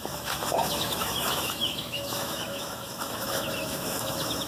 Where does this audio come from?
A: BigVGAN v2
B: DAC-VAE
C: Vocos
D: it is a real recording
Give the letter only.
B